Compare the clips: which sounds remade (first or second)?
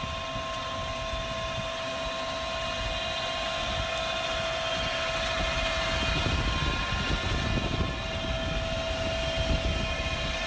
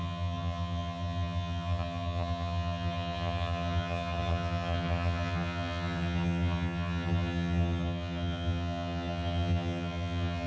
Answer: second